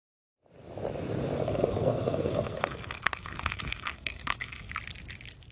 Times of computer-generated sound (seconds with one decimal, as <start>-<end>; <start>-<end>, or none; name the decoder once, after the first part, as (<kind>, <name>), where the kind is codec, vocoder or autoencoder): 1.4-4.7 (codec, SNAC)